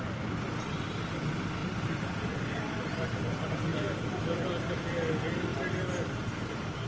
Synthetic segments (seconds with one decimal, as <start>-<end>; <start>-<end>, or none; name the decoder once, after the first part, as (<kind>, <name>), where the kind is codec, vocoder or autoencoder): none